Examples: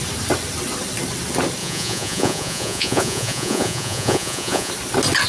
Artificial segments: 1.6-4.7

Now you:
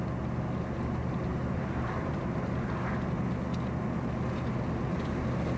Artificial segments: 1.3-2.5

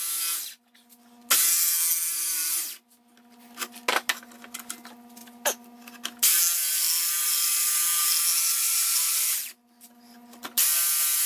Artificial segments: 8.5-9.3

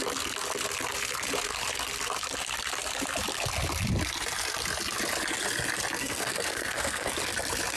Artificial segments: 6.0-7.1